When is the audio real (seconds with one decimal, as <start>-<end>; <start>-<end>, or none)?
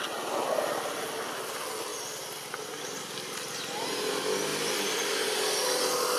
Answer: 0.0-6.2